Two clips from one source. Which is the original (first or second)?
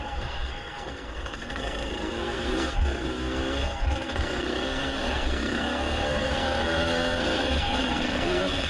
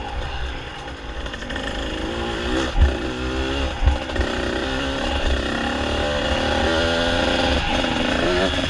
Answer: second